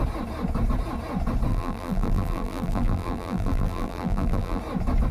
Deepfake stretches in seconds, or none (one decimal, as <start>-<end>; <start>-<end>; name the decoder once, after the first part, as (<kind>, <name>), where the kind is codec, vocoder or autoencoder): 1.5-4.6 (vocoder, BigVGAN v2)